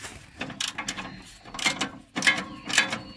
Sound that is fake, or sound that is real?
real